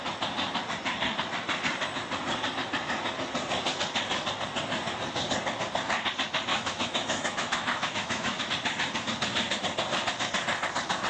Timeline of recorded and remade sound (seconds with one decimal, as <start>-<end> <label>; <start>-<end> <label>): 0.0-6.5 recorded; 6.5-8.4 remade; 8.4-11.1 recorded